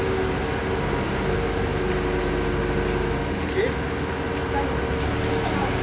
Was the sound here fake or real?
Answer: real